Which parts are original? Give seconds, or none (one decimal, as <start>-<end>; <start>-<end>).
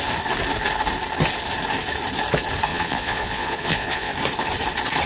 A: 0.0-2.7; 4.1-5.1